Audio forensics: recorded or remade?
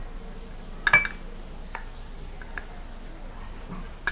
recorded